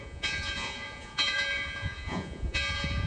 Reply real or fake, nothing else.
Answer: fake